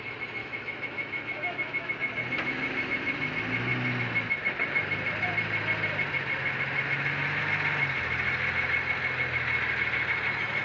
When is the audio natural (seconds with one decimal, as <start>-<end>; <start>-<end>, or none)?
0.0-0.4; 1.9-10.6

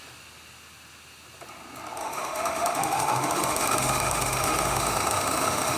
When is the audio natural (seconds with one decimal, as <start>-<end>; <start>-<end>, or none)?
0.0-2.0

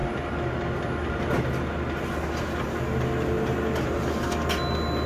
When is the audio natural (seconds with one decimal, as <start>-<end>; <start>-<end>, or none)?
0.0-5.1

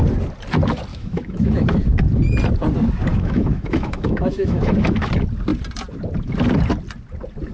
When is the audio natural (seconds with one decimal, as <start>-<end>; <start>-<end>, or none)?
0.0-0.9; 1.8-3.1; 5.1-7.5

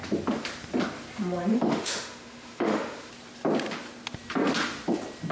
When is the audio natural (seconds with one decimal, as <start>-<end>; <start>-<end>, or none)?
0.0-1.5; 3.1-5.3